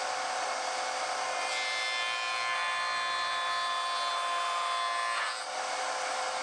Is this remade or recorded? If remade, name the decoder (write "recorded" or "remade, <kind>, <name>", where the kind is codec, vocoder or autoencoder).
recorded